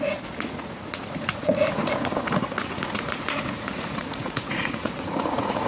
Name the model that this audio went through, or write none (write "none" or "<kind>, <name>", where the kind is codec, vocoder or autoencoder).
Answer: vocoder, Vocos